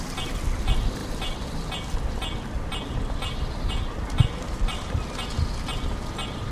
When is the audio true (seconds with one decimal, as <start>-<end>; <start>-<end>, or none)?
0.0-6.5